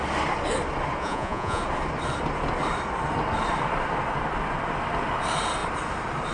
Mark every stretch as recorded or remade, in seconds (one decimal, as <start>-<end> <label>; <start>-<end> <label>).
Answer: 0.0-1.0 recorded; 1.0-1.6 remade; 1.6-6.3 recorded